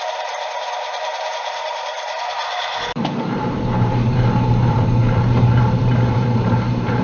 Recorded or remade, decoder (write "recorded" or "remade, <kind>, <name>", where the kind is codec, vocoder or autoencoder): remade, vocoder, BigVGAN v2